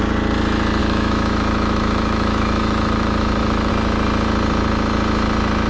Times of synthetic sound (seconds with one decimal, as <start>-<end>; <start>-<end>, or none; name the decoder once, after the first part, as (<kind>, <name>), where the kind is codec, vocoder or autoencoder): 0.8-3.7 (autoencoder, DAC-VAE)